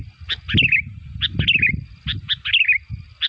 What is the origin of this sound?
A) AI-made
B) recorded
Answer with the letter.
B